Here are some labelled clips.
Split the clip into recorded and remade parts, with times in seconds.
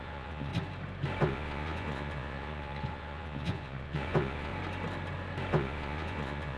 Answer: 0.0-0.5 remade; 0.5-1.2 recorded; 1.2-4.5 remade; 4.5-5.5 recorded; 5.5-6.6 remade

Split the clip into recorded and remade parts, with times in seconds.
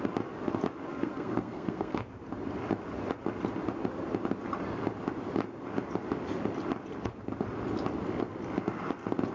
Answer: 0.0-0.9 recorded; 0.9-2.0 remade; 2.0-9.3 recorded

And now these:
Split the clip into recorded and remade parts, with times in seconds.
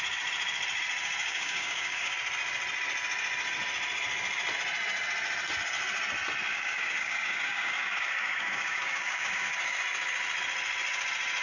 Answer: 0.0-1.2 recorded; 1.2-2.1 remade; 2.1-6.5 recorded; 6.5-9.8 remade; 9.8-11.4 recorded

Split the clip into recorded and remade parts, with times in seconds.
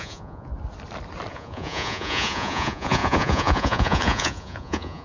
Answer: 0.0-0.5 remade; 0.5-1.3 recorded; 1.3-5.0 remade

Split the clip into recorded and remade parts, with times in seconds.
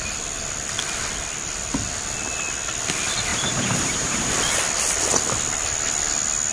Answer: 0.0-3.3 recorded; 3.3-4.3 remade; 4.3-6.5 recorded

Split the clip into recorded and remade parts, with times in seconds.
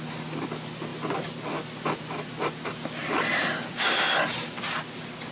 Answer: 0.0-5.3 recorded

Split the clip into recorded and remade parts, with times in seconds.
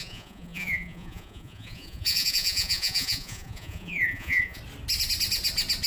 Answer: 0.0-4.6 remade; 4.6-5.9 recorded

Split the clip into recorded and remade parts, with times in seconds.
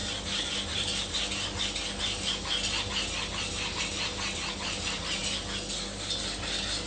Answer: 0.0-6.9 recorded